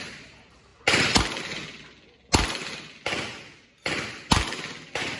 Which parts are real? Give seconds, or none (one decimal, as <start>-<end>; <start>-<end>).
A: 0.0-5.2